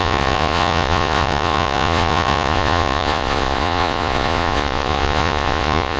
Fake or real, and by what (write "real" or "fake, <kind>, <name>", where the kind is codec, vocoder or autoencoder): fake, vocoder, Vocos